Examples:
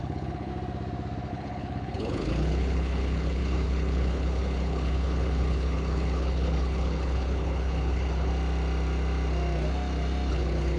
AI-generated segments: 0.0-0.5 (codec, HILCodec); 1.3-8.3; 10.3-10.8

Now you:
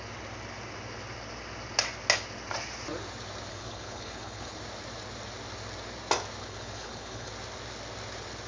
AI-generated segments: 3.5-4.6 (codec, HILCodec); 6.4-7.3

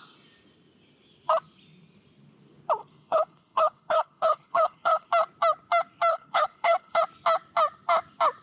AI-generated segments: 2.8-5.1 (codec, HILCodec); 6.1-7.0

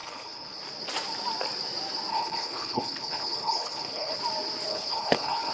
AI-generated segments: 0.0-0.6 (codec, HILCodec); 2.1-4.2; 4.7-5.5

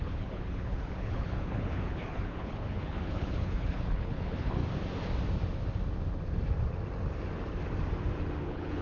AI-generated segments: 0.0-4.6 (codec, HILCodec); 8.4-8.8

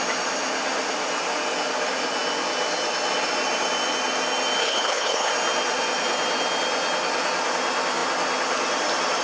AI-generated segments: 4.6-5.3 (codec, HILCodec)

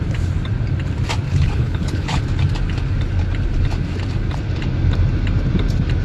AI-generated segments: 1.3-2.2 (codec, HILCodec)